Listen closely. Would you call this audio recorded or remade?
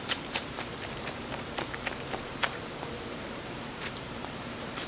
remade